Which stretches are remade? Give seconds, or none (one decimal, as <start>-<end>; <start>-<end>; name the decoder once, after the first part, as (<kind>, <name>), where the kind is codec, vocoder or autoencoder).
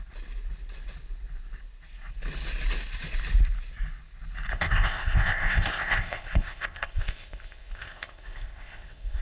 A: 4.5-9.2 (codec, ZipCodec)